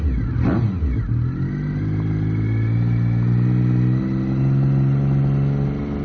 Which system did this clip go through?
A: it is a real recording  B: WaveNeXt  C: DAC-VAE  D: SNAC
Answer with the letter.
A